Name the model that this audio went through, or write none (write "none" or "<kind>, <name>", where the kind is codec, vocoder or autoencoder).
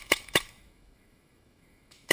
autoencoder, DAC-VAE